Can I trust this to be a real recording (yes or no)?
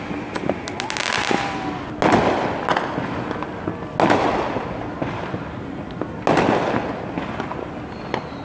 yes